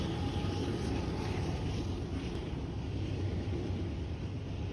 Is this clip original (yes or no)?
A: yes